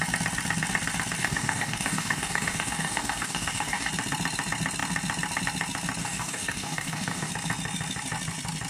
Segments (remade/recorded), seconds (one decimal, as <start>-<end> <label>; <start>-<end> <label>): 0.0-1.2 recorded; 1.2-3.9 remade; 3.9-6.0 recorded; 6.0-7.3 remade; 7.3-8.7 recorded